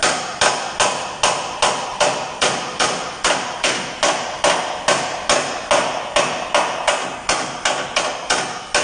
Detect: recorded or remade recorded